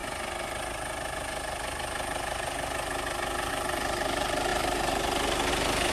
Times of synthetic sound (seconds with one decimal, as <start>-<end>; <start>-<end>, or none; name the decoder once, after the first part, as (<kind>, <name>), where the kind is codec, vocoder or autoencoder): 3.5-5.9 (vocoder, BigVGAN v2)

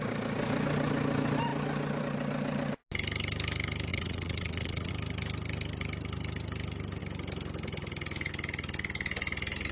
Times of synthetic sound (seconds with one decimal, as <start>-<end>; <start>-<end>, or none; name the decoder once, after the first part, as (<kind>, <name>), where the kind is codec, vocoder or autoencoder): 3.9-4.9 (vocoder, Vocos)

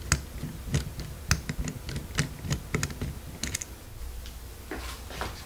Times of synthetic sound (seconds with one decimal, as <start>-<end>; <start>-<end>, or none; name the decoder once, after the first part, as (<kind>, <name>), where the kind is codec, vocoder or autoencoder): none

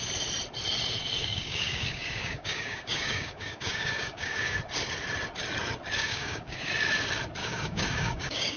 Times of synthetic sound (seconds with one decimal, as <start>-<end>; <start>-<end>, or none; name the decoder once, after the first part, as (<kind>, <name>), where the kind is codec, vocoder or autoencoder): 1.2-4.6 (codec, DAC); 6.0-6.7; 7.4-8.6